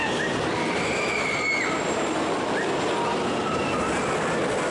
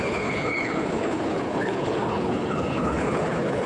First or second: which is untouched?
first